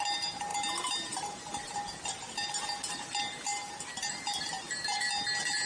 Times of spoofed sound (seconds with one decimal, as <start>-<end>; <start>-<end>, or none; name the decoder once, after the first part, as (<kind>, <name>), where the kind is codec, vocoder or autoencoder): none